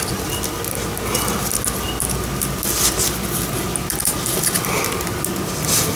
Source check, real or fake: real